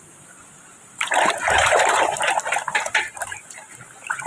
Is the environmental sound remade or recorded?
remade